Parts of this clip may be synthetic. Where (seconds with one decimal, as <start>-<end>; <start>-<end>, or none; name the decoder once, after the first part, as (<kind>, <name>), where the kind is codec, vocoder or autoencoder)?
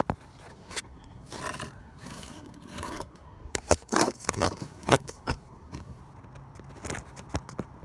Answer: 0.5-1.4 (codec, SNAC); 1.8-6.0